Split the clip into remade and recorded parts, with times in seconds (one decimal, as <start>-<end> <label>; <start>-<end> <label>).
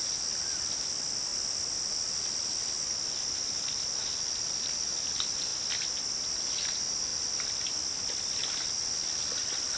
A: 0.0-9.8 recorded